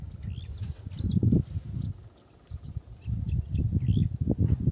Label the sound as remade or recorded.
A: recorded